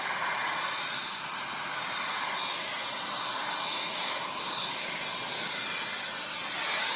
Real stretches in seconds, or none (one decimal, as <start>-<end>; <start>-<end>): 0.0-3.9; 5.0-7.0